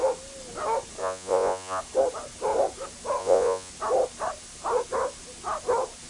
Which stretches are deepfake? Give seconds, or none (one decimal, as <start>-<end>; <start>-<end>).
1.0-1.8; 3.2-3.7